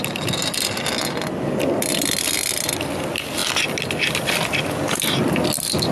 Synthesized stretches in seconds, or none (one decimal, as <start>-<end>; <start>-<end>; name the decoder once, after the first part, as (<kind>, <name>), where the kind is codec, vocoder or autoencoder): none